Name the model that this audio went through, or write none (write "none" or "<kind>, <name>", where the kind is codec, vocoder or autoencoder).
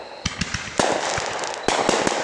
none